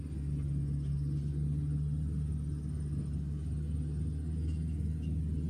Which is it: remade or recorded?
recorded